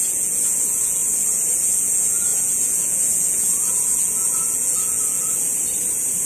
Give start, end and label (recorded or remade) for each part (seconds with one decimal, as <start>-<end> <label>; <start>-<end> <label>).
0.0-1.0 remade; 1.0-1.6 recorded; 1.6-5.5 remade; 5.5-6.3 recorded